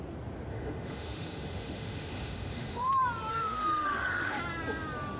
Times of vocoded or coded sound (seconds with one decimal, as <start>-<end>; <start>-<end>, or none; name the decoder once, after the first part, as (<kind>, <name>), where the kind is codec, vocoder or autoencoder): 0.5-2.9 (autoencoder, DAC-VAE); 3.3-4.4